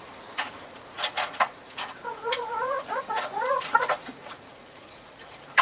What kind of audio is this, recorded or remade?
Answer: remade